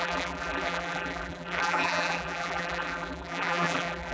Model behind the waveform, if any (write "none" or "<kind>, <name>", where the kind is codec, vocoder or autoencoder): vocoder, BigVGAN v2